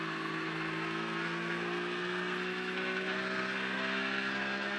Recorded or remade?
remade